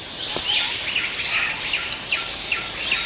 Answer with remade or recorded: recorded